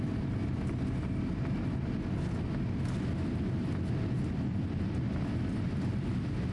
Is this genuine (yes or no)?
yes